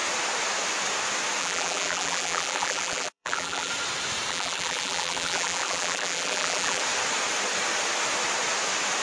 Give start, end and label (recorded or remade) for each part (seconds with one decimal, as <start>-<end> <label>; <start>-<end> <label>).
0.0-1.4 recorded; 1.4-3.7 remade; 3.7-4.3 recorded; 4.3-6.8 remade; 6.8-9.0 recorded